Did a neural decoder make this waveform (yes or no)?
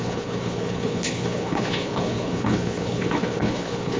yes